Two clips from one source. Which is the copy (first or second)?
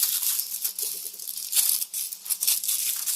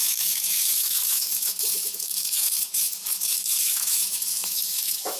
second